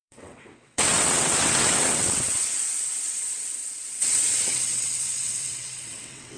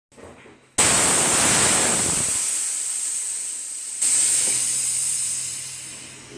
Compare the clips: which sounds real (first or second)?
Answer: second